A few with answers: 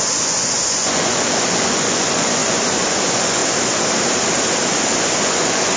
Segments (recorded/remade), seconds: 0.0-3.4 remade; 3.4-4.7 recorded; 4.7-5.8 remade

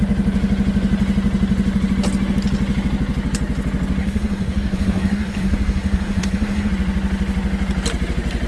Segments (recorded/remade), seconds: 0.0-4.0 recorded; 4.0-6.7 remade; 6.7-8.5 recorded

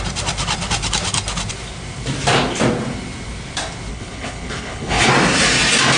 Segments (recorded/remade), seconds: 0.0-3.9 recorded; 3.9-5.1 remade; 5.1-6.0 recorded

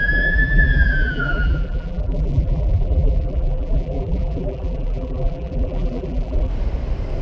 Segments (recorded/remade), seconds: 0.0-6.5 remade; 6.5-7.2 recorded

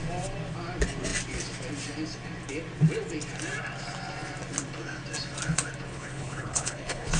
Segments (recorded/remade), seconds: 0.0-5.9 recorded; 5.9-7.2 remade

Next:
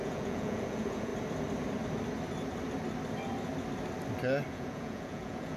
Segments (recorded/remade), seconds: 0.0-1.1 remade; 1.1-4.5 recorded; 4.5-5.6 remade

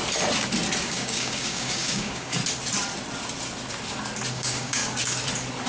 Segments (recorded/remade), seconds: 0.0-0.8 recorded; 0.8-2.4 remade; 2.4-4.3 recorded; 4.3-4.8 remade; 4.8-5.7 recorded

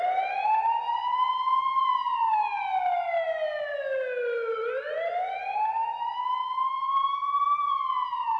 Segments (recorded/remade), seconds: 0.0-8.4 recorded